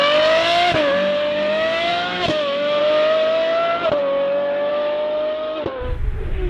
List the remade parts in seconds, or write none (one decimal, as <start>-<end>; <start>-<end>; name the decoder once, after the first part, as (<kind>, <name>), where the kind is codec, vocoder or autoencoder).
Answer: 1.9-2.8 (autoencoder, DAC-VAE)